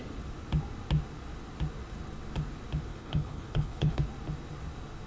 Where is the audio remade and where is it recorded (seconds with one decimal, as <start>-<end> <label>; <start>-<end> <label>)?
0.0-2.9 recorded; 2.9-4.0 remade; 4.0-5.1 recorded